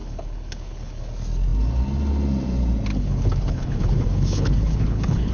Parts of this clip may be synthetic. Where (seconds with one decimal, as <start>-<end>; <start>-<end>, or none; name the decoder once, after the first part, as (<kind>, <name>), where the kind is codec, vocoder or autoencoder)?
0.0-1.0 (codec, HILCodec); 2.9-5.3